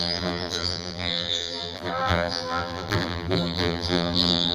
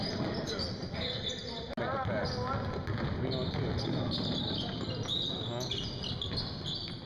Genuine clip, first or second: second